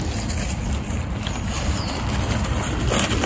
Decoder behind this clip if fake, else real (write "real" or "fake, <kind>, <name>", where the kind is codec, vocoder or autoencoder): real